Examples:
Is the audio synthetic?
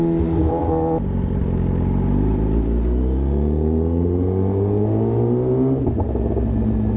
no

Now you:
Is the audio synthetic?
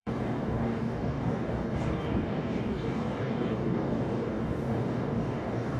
yes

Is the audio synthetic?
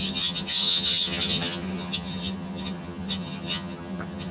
yes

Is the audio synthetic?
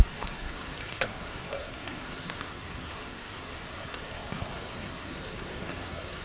yes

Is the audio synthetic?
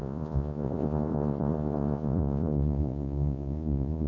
yes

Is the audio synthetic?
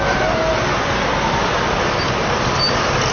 no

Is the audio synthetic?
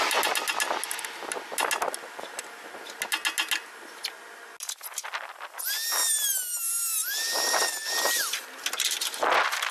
no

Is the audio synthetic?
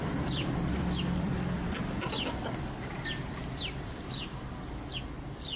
yes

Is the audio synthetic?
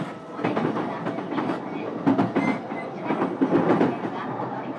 no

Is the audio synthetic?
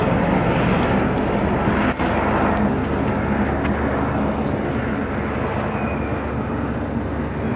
no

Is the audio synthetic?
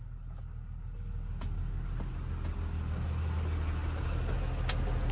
no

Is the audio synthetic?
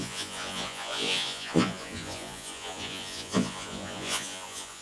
yes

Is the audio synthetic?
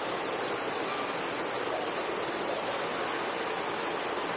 no